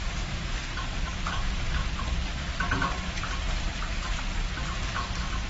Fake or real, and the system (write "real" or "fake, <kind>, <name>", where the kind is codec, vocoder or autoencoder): real